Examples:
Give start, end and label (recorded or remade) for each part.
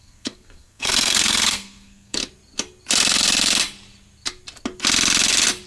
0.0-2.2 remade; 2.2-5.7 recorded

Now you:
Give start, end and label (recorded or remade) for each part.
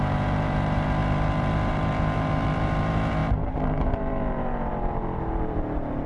0.0-6.1 remade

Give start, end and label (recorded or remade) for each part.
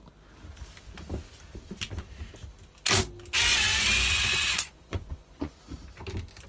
0.0-3.5 recorded; 3.5-5.6 remade; 5.6-6.5 recorded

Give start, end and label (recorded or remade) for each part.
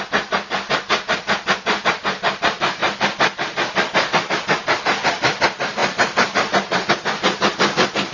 0.0-5.8 recorded; 5.8-6.9 remade; 6.9-8.1 recorded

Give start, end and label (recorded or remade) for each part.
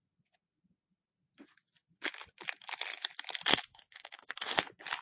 0.0-3.5 recorded; 3.5-4.6 remade; 4.6-5.0 recorded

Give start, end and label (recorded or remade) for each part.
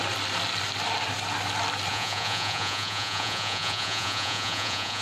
0.0-1.9 recorded; 1.9-5.0 remade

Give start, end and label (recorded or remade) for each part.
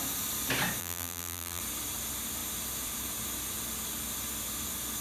0.0-0.8 recorded; 0.8-1.6 remade; 1.6-5.0 recorded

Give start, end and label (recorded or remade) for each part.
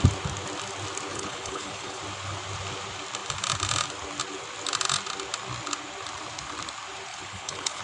0.0-1.1 recorded; 1.1-2.0 remade; 2.0-7.1 recorded; 7.1-7.8 remade